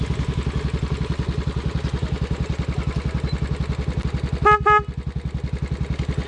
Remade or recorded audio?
recorded